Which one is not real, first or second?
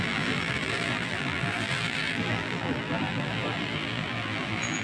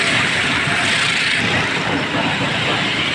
first